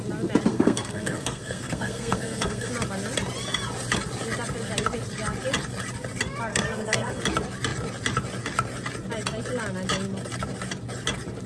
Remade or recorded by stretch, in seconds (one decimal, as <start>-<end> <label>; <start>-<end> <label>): 0.0-0.5 recorded; 0.5-2.7 remade; 2.7-6.5 recorded; 6.5-7.2 remade; 7.2-11.5 recorded